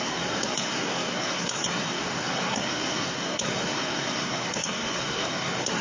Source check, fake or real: fake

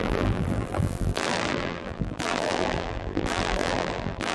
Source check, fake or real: fake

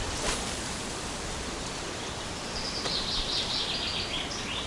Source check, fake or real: fake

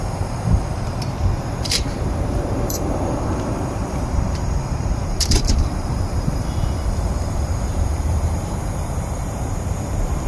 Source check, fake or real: fake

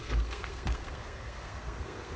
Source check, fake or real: fake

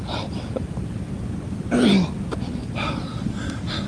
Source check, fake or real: real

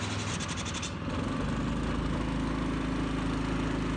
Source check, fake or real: real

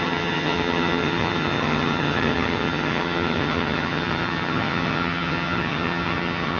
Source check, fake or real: fake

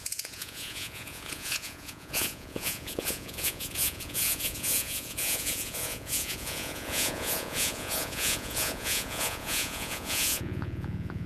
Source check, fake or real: fake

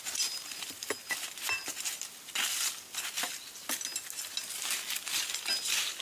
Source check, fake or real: real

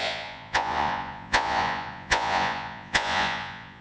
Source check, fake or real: fake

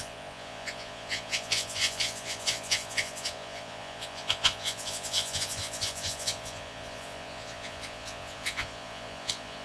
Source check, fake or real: fake